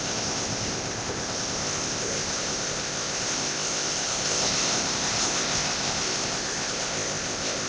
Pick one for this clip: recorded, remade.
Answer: remade